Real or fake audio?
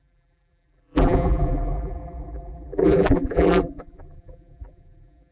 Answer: fake